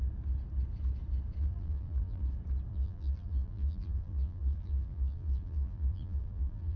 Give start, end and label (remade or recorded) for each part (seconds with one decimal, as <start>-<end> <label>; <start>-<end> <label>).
0.0-1.4 recorded; 1.4-2.2 remade; 2.2-2.7 recorded; 2.7-6.8 remade

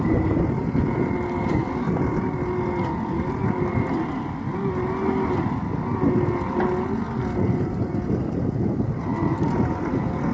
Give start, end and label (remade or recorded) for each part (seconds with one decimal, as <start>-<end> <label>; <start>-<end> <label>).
0.0-10.3 recorded

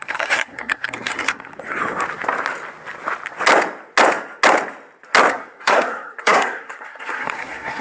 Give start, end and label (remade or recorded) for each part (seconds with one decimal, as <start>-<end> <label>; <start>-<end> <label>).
0.0-1.5 remade; 1.5-5.3 recorded; 5.3-7.8 remade

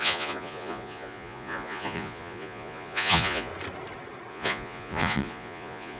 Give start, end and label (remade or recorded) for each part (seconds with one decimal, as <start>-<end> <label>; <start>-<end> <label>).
0.0-3.5 remade; 3.5-4.3 recorded; 4.3-6.0 remade